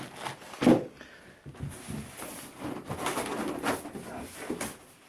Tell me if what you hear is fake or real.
real